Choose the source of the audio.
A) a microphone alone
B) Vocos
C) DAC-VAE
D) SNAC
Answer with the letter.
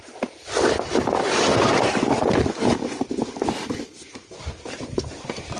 A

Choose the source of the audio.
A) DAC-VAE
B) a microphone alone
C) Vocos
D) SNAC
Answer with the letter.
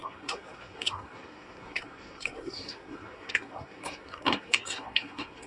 D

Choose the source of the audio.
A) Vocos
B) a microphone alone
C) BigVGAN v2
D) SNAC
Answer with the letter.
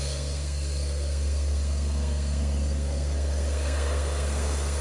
D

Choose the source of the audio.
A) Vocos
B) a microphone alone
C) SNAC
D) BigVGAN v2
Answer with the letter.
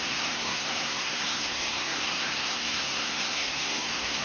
C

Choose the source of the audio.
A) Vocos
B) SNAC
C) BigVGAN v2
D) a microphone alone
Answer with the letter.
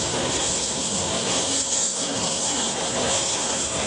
B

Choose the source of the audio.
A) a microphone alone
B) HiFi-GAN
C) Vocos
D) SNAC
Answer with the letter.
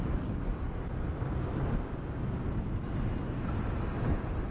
A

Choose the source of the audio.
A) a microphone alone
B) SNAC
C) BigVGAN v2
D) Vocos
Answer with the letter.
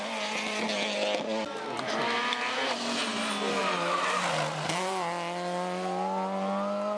A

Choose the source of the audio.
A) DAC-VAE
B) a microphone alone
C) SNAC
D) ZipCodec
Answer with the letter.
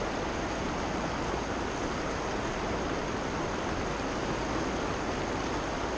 B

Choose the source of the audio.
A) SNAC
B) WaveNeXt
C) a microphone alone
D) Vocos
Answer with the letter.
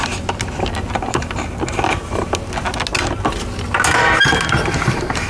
C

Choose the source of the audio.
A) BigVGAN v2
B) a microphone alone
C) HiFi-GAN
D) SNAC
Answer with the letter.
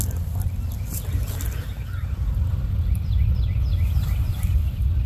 B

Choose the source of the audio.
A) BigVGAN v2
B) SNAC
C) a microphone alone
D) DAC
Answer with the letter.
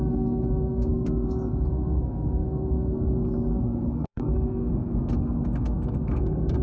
B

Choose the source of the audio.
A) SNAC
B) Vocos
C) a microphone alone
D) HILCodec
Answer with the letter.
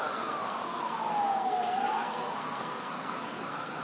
A